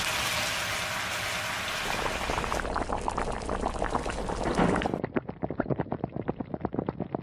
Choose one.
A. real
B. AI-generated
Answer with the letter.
A